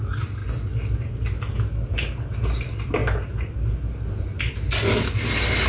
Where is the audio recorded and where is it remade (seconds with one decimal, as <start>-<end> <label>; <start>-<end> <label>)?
0.0-5.7 recorded